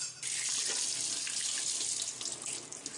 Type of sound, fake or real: real